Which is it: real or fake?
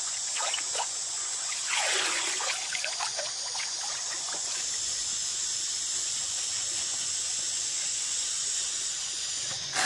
fake